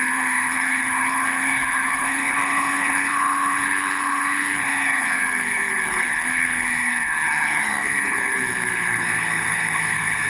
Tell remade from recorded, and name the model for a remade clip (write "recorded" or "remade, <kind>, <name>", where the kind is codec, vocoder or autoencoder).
remade, codec, HILCodec